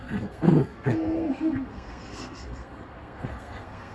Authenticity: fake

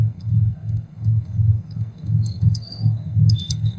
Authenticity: fake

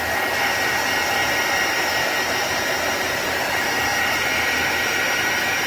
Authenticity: real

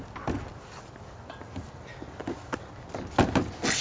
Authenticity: real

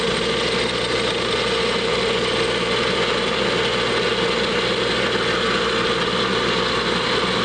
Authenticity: real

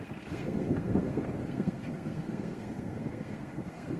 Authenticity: fake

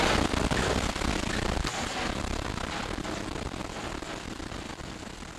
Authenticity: real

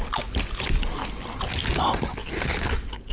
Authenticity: real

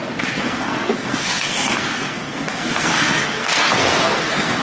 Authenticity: fake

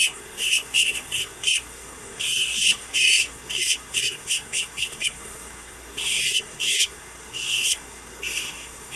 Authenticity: fake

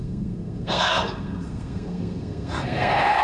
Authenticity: fake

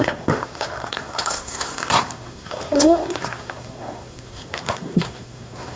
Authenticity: fake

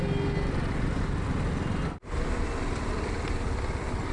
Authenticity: real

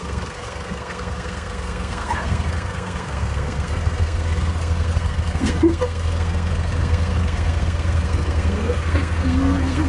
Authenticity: fake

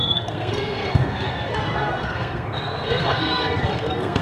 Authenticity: fake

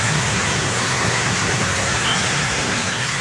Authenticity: fake